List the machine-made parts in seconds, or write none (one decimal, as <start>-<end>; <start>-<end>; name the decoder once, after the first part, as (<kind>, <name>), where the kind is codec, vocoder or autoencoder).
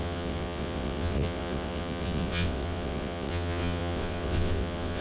0.0-5.0 (vocoder, WaveNeXt)